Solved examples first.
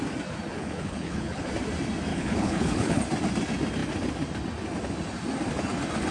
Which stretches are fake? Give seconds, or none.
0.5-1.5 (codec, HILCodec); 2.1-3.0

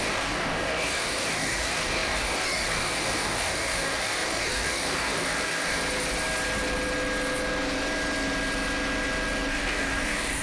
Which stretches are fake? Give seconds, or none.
0.0-5.8 (codec, DAC); 9.5-10.4

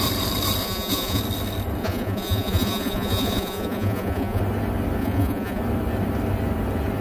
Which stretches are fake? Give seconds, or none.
0.6-1.2 (vocoder, Vocos); 1.8-4.4; 5.0-5.6